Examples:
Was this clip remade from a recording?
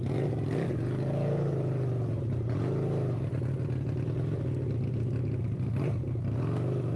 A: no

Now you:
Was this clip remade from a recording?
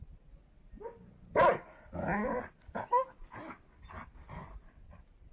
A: no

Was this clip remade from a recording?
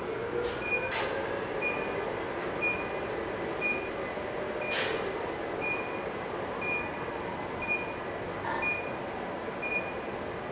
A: no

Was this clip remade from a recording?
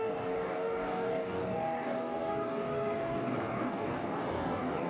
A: yes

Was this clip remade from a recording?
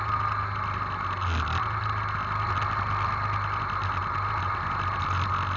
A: no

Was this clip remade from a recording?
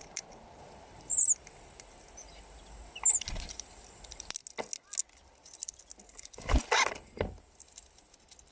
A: no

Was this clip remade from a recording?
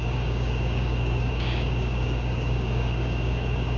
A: yes